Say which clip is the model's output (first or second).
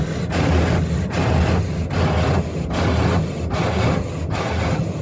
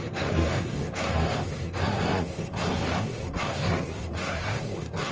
second